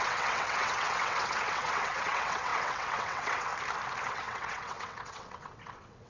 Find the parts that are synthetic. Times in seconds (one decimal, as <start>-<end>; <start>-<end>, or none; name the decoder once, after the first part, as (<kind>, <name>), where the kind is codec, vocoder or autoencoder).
0.0-3.5 (vocoder, WaveNeXt); 4.0-6.1